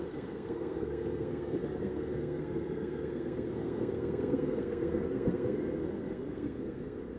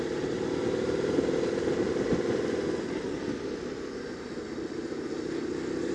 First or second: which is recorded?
second